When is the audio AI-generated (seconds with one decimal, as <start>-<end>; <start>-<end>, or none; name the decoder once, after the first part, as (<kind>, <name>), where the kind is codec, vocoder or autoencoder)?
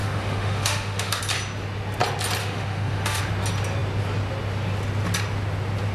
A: 0.0-1.2 (autoencoder, DAC-VAE); 2.4-3.2